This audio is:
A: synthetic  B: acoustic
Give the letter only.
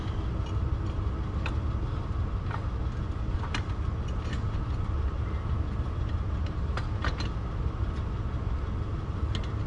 B